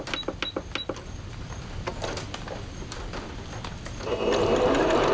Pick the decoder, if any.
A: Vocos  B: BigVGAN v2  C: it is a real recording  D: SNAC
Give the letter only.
C